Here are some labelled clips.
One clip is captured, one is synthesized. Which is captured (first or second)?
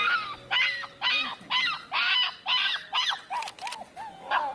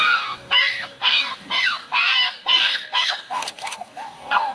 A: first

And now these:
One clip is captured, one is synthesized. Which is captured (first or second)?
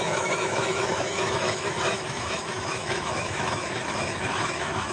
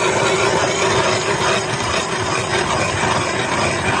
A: second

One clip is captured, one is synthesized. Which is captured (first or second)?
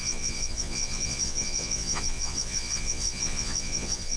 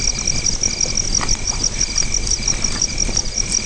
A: second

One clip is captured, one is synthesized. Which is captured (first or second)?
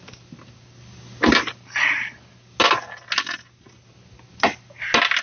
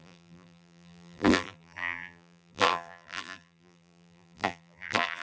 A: first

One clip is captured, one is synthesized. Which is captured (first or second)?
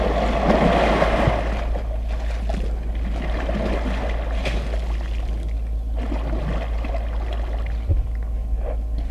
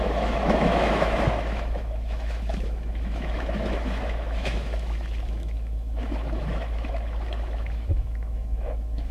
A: first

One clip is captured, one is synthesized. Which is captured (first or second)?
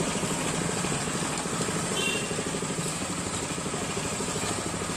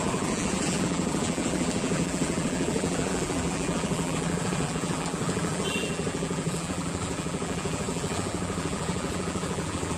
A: first